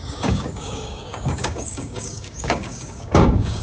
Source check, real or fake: fake